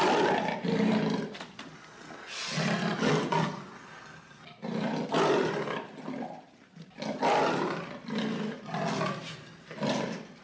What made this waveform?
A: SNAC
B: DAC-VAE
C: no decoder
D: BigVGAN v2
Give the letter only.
C